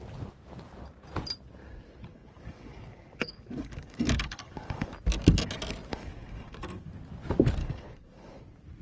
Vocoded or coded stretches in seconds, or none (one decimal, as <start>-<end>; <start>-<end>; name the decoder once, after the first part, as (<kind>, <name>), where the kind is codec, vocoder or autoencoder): 2.1-4.9 (codec, DAC); 5.9-6.9; 7.6-8.4